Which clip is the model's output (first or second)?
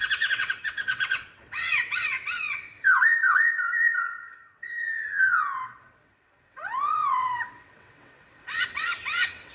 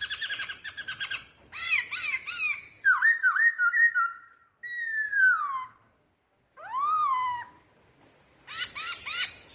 first